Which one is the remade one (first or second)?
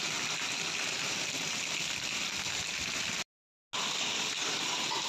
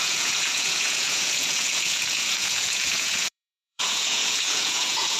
second